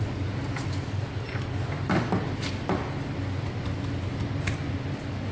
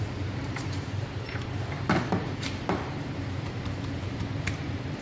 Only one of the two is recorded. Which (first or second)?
first